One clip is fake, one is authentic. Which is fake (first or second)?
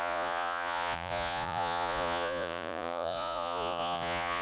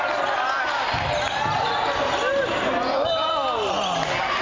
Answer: first